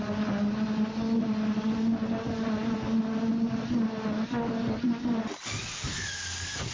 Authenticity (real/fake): real